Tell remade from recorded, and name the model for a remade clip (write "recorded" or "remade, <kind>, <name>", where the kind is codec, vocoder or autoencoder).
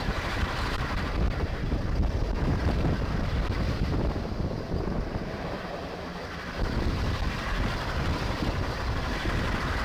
remade, vocoder, BigVGAN v2